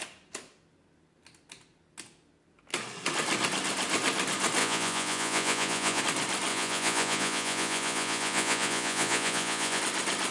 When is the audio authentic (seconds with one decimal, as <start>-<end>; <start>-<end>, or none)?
0.0-4.6; 6.0-6.5; 9.8-10.3